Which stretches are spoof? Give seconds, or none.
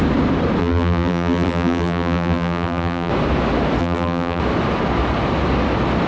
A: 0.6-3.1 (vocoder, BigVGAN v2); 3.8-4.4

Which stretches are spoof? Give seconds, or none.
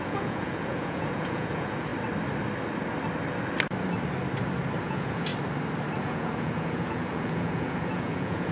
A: 0.0-1.9 (vocoder, Vocos); 4.8-5.3; 6.0-8.5